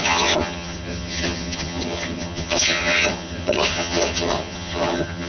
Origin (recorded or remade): remade